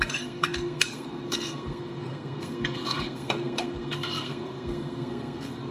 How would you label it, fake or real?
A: fake